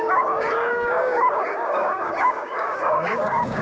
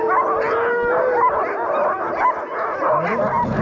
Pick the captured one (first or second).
second